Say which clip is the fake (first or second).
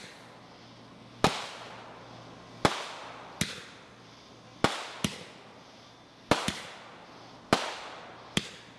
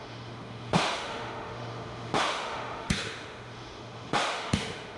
second